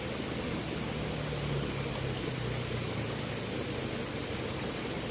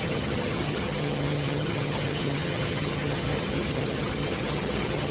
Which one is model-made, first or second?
second